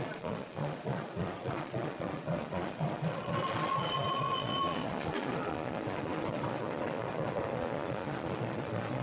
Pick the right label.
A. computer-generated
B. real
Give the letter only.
A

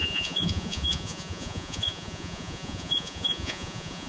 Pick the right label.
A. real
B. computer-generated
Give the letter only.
B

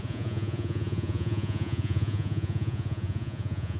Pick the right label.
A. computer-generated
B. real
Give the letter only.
A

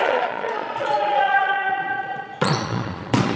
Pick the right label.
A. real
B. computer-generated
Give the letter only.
B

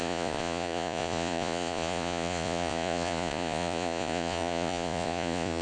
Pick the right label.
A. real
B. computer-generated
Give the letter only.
B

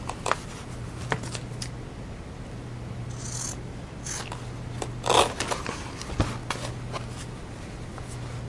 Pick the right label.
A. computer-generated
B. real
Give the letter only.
B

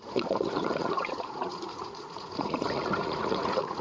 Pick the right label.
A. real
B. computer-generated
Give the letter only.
B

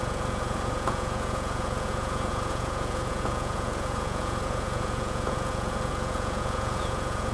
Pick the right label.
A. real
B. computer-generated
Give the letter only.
B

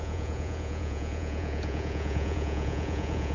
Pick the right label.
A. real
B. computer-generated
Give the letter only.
B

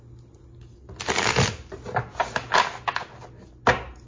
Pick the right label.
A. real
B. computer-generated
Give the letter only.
A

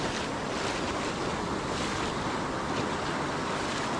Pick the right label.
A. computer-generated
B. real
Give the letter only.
B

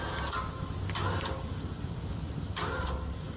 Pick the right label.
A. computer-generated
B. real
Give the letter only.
B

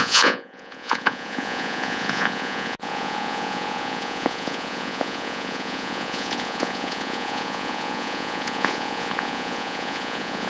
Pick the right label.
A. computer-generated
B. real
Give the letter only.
A